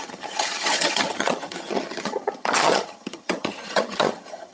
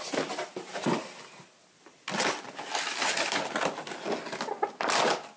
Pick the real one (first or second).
second